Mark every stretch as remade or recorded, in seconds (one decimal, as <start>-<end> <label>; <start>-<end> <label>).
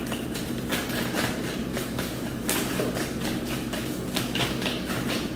0.0-1.7 recorded; 1.7-4.9 remade; 4.9-5.4 recorded